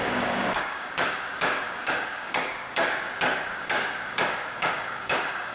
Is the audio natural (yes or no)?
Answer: no